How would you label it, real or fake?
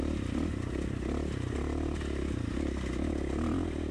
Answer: real